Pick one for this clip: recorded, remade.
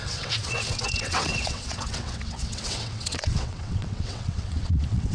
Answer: remade